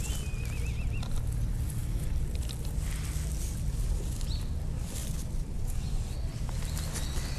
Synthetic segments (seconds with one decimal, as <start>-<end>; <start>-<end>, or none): none